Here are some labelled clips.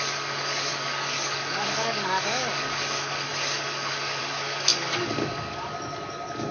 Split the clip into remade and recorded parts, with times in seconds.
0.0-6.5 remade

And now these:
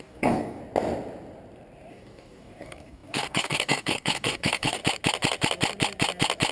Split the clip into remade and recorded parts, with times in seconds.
0.0-0.6 remade; 0.6-1.9 recorded; 1.9-4.8 remade; 4.8-6.5 recorded

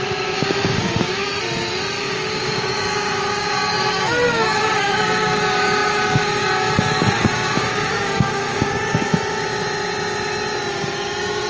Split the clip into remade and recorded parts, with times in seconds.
0.0-1.3 remade; 1.3-2.0 recorded; 2.0-9.1 remade; 9.1-10.7 recorded; 10.7-11.5 remade

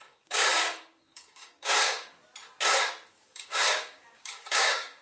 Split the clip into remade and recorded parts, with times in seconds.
0.0-2.2 remade; 2.2-3.1 recorded; 3.1-5.0 remade

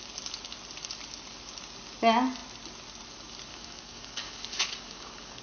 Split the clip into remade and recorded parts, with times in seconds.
0.0-3.5 recorded; 3.5-5.4 remade